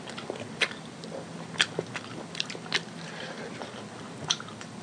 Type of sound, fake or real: real